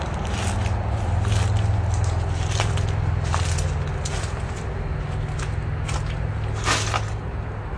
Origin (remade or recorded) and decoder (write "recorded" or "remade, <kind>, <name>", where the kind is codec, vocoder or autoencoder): recorded